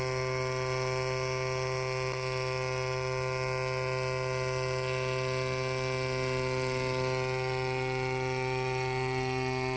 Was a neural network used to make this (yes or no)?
no